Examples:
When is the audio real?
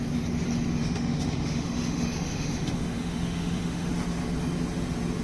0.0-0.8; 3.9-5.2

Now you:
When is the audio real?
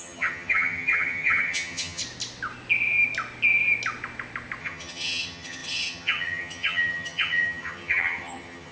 2.0-4.6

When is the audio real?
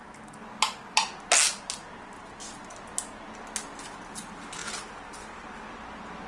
0.0-6.3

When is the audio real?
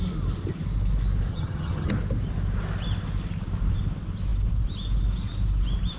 0.0-1.3; 1.9-6.0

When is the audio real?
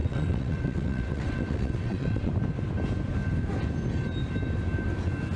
2.3-5.4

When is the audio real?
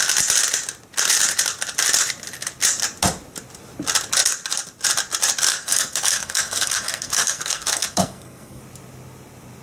0.0-5.5; 8.6-9.6